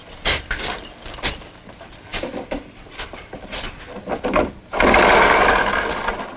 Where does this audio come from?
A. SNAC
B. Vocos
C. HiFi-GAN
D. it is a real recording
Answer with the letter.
D